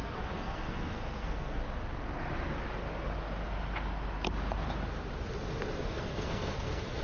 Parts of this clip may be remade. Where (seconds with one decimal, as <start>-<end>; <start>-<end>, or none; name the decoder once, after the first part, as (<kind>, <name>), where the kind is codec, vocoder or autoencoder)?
0.0-1.6 (codec, SNAC); 5.8-7.0